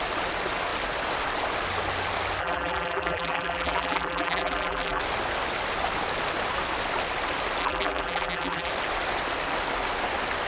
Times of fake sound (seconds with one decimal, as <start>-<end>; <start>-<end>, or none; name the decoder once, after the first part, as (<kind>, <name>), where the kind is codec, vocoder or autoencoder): 2.4-5.0 (vocoder, BigVGAN v2); 7.6-8.7